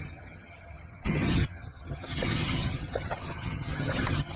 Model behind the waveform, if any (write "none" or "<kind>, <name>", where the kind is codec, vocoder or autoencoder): vocoder, HiFi-GAN